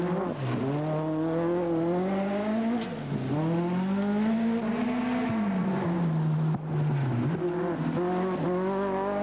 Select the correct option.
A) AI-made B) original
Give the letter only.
B